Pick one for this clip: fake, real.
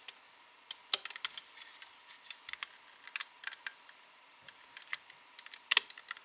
real